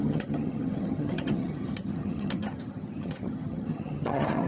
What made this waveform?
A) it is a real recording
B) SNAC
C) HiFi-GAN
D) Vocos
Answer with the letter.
C